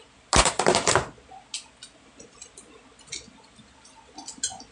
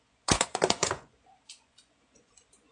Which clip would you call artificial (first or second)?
second